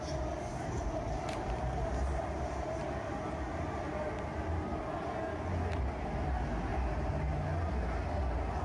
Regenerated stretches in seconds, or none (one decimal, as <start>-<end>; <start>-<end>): 0.5-3.9; 6.7-7.2